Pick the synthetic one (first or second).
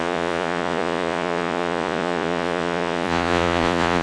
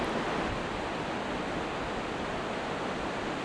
first